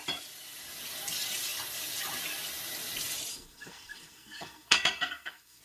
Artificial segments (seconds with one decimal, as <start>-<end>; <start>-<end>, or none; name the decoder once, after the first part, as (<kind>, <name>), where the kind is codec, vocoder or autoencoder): 3.3-5.6 (codec, SNAC)